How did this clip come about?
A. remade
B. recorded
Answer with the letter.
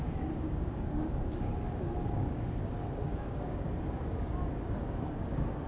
A